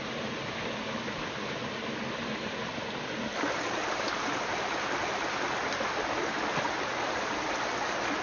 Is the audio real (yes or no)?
yes